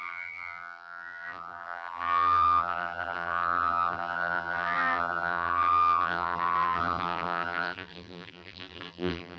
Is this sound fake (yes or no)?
yes